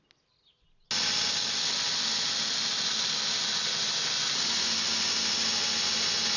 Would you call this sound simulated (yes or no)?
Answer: no